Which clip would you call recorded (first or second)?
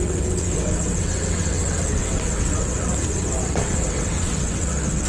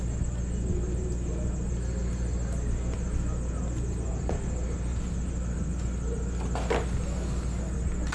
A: second